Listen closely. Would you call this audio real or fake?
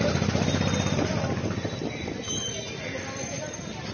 real